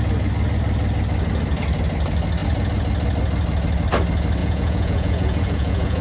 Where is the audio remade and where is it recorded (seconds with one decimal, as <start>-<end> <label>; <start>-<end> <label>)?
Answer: 0.0-4.4 recorded; 4.4-6.0 remade